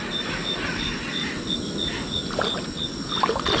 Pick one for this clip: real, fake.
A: real